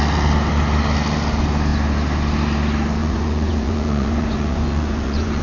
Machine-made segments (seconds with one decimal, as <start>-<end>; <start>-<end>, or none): 3.0-5.4